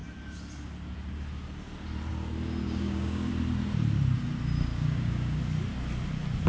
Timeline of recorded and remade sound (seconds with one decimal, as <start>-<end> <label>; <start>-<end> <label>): 0.0-2.6 recorded; 2.6-3.3 remade; 3.3-4.7 recorded; 4.7-5.4 remade; 5.4-6.5 recorded